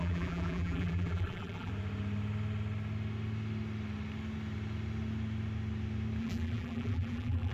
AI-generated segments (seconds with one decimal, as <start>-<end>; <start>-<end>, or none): 0.0-1.7; 6.2-7.5